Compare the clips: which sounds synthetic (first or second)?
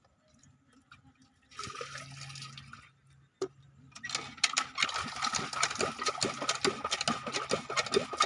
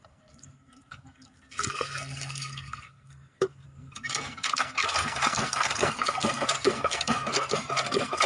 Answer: second